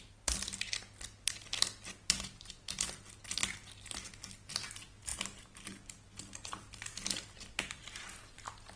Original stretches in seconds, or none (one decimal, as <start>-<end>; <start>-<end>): 0.0-8.8